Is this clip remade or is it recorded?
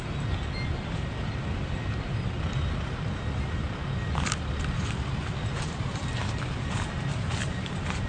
recorded